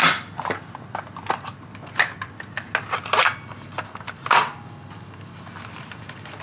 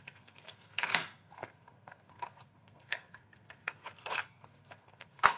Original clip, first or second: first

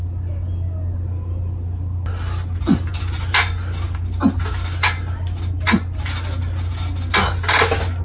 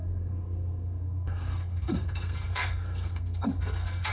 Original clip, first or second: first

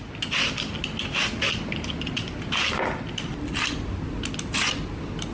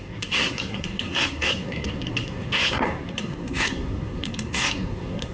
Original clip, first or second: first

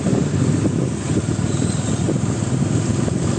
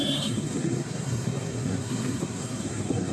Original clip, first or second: first